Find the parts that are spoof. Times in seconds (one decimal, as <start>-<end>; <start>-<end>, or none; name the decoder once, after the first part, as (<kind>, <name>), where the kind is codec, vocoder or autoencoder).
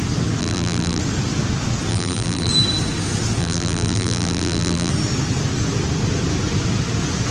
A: 0.4-1.0 (vocoder, BigVGAN v2); 1.9-2.5; 3.4-4.9